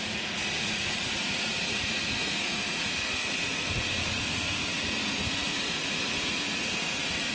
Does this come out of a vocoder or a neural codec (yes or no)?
yes